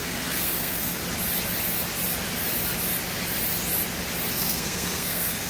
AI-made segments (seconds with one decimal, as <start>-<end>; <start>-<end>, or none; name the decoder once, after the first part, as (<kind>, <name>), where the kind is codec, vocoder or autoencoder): 0.0-1.0 (codec, SNAC); 4.3-5.5